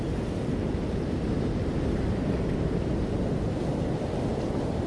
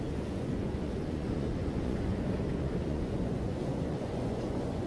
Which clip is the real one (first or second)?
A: first